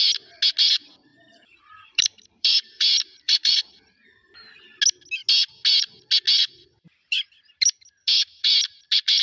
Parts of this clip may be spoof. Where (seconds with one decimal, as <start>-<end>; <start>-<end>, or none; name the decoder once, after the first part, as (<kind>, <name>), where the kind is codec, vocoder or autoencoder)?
1.1-3.6 (vocoder, BigVGAN v2)